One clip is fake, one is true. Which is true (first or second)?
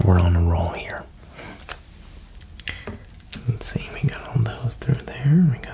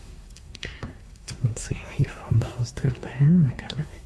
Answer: first